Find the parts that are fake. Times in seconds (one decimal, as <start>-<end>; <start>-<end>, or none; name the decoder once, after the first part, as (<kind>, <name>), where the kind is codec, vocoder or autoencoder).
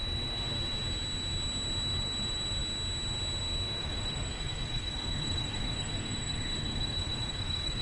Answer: 3.8-7.8 (autoencoder, DAC-VAE)